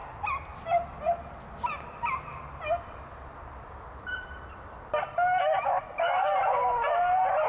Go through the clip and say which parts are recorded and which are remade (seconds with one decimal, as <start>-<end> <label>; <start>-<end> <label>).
0.0-7.5 recorded